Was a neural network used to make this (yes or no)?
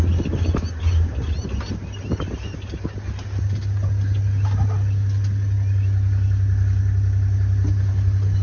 no